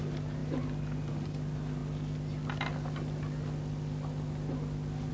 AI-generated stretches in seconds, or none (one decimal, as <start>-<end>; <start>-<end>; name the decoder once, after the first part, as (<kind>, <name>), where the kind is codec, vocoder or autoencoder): none